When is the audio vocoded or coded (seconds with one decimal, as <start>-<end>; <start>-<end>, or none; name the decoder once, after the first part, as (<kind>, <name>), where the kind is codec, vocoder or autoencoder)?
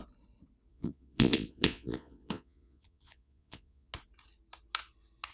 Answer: 0.7-3.9 (vocoder, Vocos)